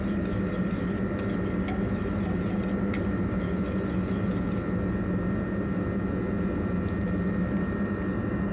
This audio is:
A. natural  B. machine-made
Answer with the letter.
A